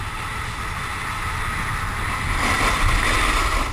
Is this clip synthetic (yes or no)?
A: no